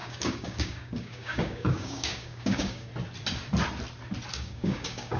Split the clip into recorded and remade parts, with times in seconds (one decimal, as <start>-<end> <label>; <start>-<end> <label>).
0.0-2.9 remade; 2.9-4.3 recorded; 4.3-5.2 remade